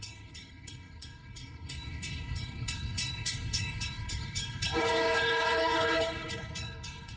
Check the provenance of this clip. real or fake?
fake